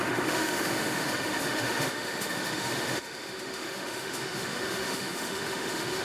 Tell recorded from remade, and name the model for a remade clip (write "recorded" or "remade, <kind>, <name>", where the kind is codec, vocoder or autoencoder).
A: remade, autoencoder, DAC-VAE